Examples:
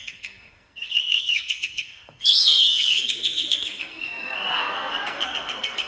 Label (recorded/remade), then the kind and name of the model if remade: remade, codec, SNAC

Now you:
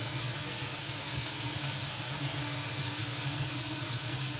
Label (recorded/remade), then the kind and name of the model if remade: remade, codec, SNAC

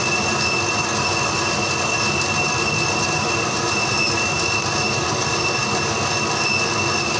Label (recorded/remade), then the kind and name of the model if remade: recorded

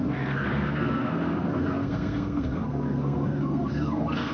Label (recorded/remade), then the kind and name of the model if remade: remade, codec, SNAC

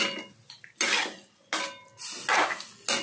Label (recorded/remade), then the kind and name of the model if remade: recorded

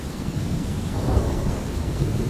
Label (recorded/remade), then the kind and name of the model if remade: remade, codec, SNAC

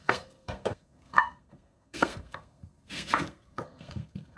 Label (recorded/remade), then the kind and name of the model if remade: remade, codec, SNAC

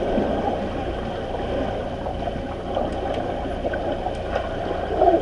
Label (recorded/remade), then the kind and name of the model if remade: recorded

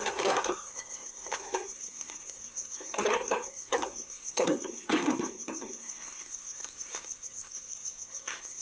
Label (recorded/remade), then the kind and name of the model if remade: remade, codec, SNAC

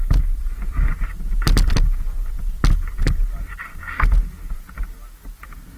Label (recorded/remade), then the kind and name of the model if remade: recorded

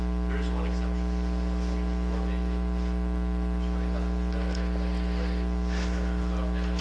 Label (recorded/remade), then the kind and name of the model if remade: recorded